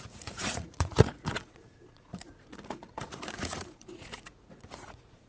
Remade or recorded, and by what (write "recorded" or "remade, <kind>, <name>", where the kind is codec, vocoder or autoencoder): remade, vocoder, Vocos